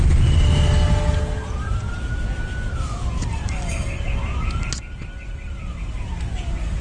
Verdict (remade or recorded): recorded